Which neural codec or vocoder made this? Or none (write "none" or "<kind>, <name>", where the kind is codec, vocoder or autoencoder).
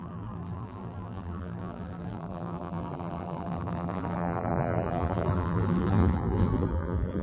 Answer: vocoder, BigVGAN v2